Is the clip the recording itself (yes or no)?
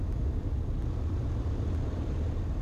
yes